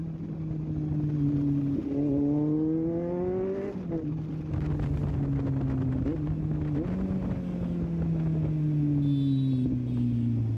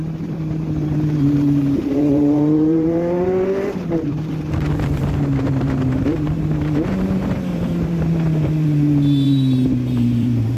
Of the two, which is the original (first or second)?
first